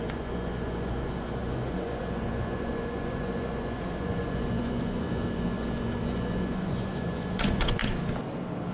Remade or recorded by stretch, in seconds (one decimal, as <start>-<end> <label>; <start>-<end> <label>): 0.0-7.8 remade; 7.8-8.7 recorded